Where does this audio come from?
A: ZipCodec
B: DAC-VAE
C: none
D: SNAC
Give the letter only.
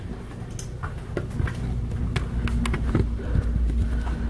C